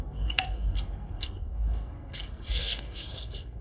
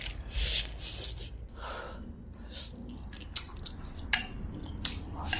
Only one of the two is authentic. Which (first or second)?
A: second